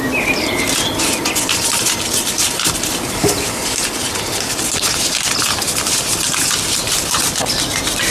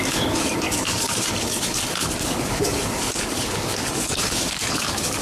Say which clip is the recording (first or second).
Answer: first